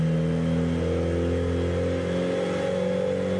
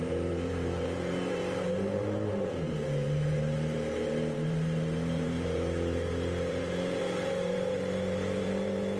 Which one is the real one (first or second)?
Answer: first